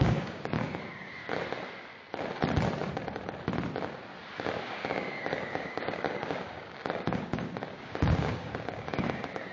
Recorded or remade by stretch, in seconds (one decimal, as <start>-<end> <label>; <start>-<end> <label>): 0.0-1.2 remade; 1.2-4.6 recorded; 4.6-9.5 remade